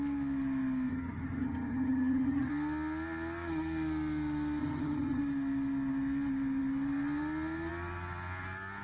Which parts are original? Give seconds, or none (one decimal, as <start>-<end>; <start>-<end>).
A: 0.0-0.9; 2.5-4.6; 5.2-8.8